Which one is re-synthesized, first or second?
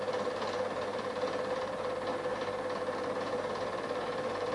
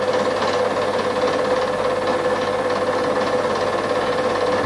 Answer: first